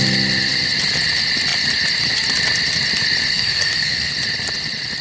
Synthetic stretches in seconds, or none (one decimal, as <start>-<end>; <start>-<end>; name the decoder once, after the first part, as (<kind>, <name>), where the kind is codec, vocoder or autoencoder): 3.3-4.1 (codec, SNAC)